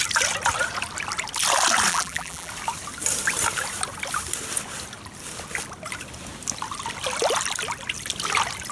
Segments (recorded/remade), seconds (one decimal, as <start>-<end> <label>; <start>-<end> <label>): 0.0-1.9 recorded; 1.9-2.5 remade; 2.5-8.7 recorded